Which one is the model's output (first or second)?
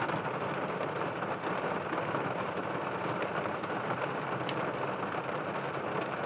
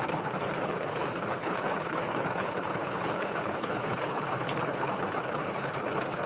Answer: second